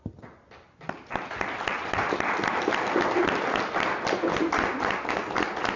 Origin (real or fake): real